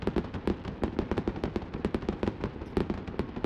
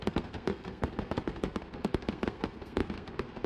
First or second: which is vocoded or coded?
second